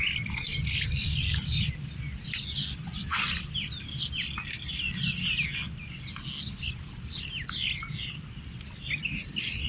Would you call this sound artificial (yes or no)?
no